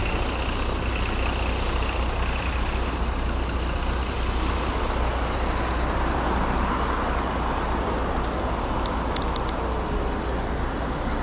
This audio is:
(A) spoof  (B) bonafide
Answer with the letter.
B